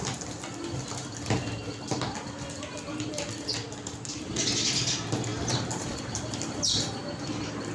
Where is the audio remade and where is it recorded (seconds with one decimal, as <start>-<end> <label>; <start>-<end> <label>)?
0.0-5.3 recorded; 5.3-6.4 remade; 6.4-7.7 recorded